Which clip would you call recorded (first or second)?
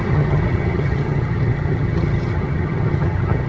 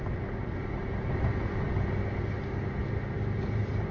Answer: second